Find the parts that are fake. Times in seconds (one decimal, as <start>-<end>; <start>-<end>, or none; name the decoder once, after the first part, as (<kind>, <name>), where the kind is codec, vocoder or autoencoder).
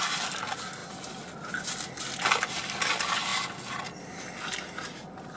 none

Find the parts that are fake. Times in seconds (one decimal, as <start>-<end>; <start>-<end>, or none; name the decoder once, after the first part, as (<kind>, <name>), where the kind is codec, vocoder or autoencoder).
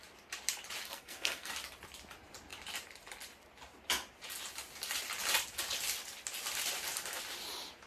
0.8-1.5 (codec, SNAC)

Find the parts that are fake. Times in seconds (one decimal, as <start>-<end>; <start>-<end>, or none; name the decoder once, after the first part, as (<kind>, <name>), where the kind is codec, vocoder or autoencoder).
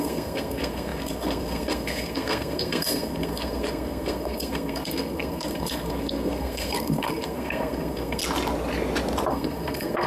0.0-8.2 (codec, SNAC); 9.3-10.1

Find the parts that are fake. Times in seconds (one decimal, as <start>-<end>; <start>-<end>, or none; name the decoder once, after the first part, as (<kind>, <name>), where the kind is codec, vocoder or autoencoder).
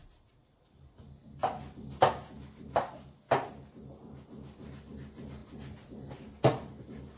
none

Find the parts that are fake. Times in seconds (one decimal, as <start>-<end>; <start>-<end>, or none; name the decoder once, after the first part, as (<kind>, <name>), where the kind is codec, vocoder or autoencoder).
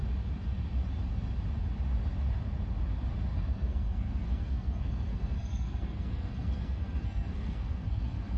3.3-8.4 (codec, SNAC)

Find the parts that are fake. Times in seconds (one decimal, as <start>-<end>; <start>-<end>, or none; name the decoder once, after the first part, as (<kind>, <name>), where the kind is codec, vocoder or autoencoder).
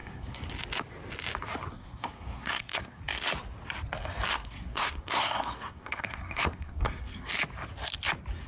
0.0-0.5 (codec, SNAC); 1.7-3.0; 4.3-7.3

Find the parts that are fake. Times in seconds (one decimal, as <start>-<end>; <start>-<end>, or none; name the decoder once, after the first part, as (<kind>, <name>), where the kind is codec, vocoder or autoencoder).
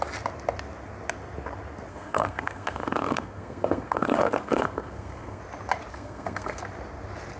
1.9-5.4 (codec, SNAC); 5.9-6.6